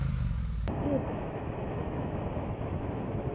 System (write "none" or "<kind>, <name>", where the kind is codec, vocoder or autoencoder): autoencoder, DAC-VAE